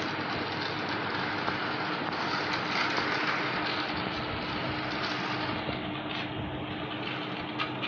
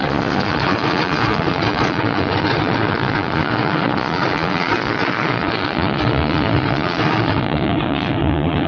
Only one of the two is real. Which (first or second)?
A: first